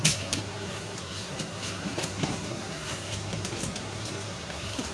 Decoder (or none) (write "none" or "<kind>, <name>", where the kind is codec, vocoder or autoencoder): codec, SNAC